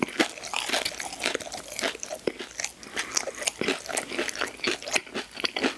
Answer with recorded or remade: recorded